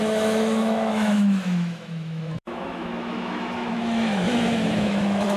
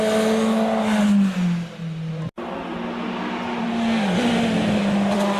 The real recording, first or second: second